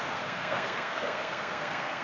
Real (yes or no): no